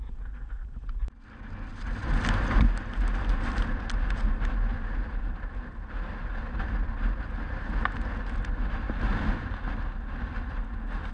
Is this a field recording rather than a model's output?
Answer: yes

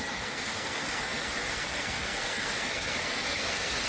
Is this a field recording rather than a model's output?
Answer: no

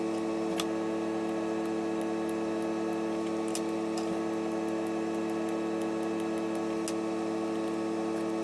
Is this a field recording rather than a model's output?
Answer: yes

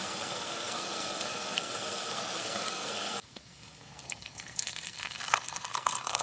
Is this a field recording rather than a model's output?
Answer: no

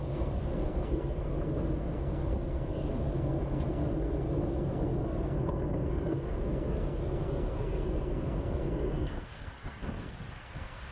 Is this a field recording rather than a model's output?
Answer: no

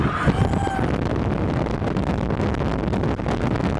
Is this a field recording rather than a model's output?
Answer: yes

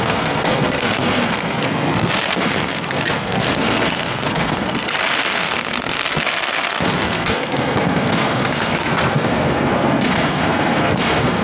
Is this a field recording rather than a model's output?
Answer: no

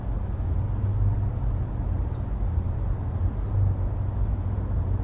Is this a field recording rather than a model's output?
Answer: yes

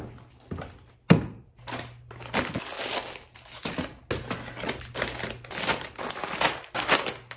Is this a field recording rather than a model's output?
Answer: yes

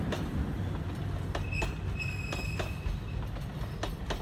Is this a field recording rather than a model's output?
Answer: yes